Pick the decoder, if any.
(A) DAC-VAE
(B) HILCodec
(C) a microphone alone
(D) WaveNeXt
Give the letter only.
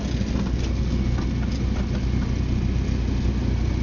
C